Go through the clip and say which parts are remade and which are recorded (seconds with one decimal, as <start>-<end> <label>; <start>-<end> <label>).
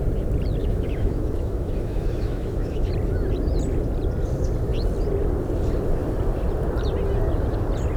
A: 0.0-0.6 recorded; 0.6-2.9 remade; 2.9-8.0 recorded